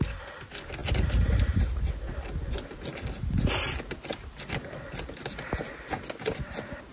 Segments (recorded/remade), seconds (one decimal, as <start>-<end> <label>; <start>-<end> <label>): 0.0-6.9 recorded

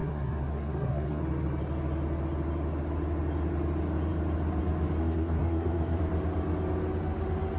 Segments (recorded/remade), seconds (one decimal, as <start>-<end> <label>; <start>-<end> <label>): 0.0-1.2 remade; 1.2-5.0 recorded; 5.0-6.0 remade; 6.0-7.6 recorded

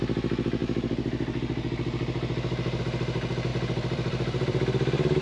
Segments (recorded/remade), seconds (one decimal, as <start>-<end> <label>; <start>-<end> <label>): 0.0-3.5 recorded; 3.5-5.2 remade

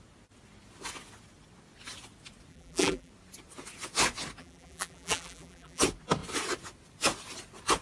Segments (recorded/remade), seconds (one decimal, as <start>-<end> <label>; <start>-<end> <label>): 0.0-2.5 recorded; 2.5-3.1 remade; 3.1-4.4 recorded; 4.4-5.8 remade; 5.8-7.8 recorded